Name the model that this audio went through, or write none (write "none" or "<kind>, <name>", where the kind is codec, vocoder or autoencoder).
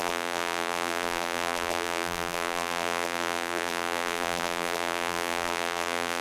vocoder, BigVGAN v2